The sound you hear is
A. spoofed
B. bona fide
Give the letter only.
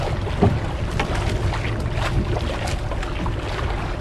B